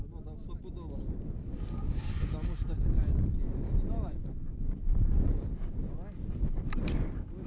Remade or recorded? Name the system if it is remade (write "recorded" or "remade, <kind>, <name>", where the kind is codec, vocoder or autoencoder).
recorded